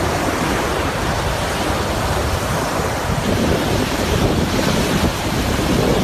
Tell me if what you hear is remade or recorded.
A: remade